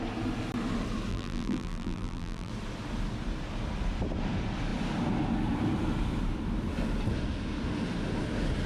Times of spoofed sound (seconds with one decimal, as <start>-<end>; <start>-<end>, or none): 1.1-2.5